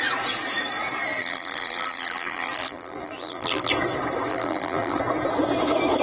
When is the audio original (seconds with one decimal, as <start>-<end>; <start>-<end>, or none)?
0.0-1.2; 3.7-4.3; 5.0-6.0